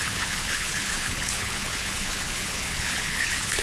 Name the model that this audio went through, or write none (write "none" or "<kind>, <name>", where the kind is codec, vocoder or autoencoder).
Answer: codec, HILCodec